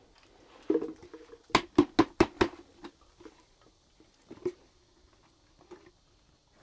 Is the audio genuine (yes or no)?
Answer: yes